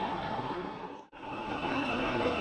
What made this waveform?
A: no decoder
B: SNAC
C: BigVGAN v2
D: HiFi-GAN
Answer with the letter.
B